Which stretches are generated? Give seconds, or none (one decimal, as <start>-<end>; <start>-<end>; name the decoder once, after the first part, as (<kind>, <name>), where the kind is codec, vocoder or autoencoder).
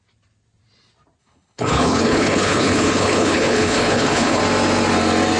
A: 1.2-4.4 (codec, HILCodec)